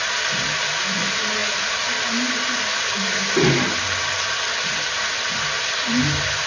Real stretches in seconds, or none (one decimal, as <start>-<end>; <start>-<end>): 0.0-6.5